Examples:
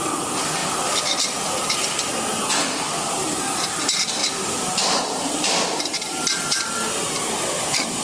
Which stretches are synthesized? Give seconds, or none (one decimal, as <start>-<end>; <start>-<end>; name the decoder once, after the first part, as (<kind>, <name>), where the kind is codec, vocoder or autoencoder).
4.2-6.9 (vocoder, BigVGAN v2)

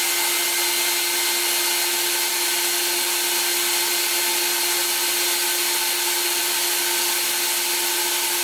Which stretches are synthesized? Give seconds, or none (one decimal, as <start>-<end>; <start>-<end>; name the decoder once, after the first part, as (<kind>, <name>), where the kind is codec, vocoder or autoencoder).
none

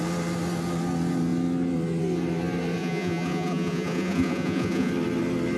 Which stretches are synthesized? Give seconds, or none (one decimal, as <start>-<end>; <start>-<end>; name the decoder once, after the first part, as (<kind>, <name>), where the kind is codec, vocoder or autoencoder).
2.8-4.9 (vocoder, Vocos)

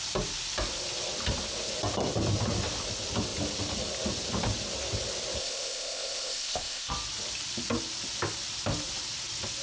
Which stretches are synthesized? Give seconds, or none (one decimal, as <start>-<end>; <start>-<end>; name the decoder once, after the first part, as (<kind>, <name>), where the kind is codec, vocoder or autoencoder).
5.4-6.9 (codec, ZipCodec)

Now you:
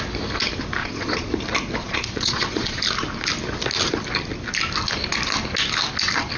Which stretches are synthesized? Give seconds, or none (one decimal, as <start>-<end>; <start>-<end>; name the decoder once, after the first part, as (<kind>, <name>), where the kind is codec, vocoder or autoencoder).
0.8-1.3 (vocoder, Vocos); 1.8-2.8

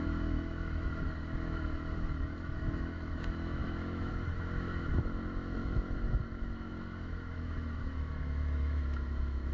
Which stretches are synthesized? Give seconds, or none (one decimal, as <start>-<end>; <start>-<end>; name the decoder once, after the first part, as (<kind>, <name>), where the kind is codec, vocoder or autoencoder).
0.0-9.5 (autoencoder, DAC-VAE)

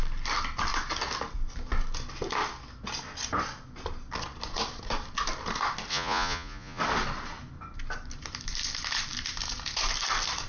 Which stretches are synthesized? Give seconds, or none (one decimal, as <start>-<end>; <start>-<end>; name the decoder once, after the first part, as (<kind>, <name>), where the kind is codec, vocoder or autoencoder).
5.9-6.8 (vocoder, Vocos)